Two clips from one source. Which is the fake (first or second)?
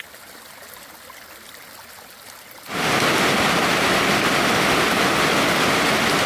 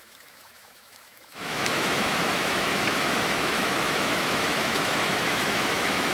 second